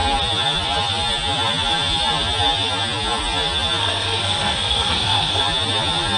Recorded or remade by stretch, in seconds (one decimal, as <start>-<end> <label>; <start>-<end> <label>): 0.0-3.8 recorded; 3.8-5.4 remade; 5.4-6.2 recorded